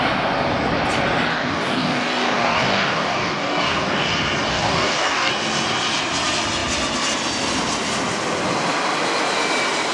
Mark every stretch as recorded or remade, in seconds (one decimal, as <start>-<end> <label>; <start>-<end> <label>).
0.0-1.3 recorded; 1.3-4.1 remade; 4.1-4.5 recorded; 4.5-5.3 remade; 5.3-9.9 recorded